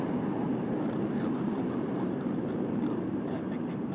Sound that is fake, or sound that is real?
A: fake